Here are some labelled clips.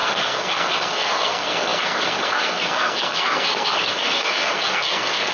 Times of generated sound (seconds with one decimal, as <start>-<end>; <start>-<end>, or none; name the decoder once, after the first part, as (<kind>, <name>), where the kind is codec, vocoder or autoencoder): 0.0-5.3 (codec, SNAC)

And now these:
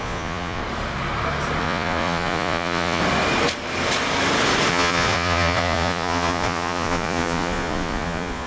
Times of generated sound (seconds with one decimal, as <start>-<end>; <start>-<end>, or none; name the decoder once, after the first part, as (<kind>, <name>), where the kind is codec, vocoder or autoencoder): 0.0-0.6 (vocoder, Vocos); 1.6-3.0; 4.7-8.5

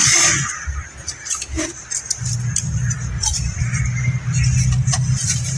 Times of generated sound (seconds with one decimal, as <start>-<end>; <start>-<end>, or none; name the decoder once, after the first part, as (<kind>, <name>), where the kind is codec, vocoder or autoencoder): 3.2-3.8 (vocoder, BigVGAN v2)

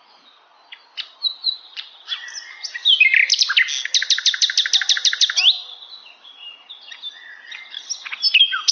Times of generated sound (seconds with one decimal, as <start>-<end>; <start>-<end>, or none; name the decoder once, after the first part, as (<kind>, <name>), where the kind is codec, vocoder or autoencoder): 1.4-2.0 (vocoder, Vocos)

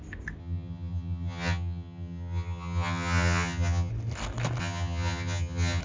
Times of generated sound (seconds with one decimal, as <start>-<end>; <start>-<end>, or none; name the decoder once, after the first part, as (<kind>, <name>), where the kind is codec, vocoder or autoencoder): 0.4-3.9 (vocoder, HiFi-GAN); 4.6-5.8